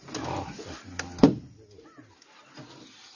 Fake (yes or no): no